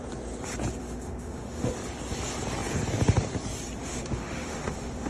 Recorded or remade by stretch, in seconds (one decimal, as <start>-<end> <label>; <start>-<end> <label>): 0.0-0.8 recorded; 0.8-1.7 remade; 1.7-3.8 recorded; 3.8-5.1 remade